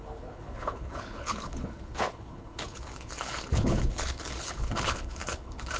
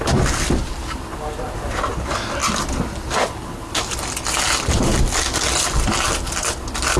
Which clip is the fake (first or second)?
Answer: first